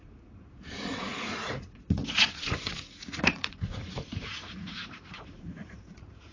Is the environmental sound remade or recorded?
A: remade